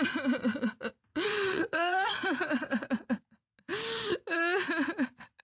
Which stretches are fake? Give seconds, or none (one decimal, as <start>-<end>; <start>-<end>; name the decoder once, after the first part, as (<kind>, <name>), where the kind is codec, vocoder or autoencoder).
1.1-3.2 (vocoder, WaveNeXt)